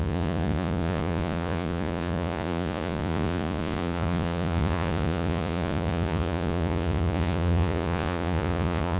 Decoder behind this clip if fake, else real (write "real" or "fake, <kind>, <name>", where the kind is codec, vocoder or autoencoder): fake, vocoder, Vocos